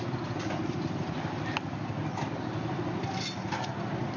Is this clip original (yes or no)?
yes